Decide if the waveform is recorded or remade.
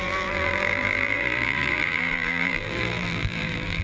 remade